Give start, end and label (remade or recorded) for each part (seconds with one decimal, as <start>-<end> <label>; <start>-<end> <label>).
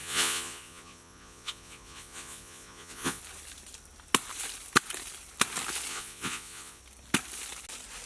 0.0-3.2 remade; 3.2-5.9 recorded; 5.9-6.8 remade; 6.8-8.1 recorded